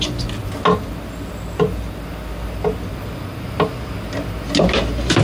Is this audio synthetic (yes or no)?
no